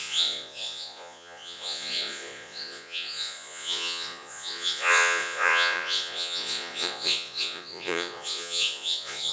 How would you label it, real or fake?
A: fake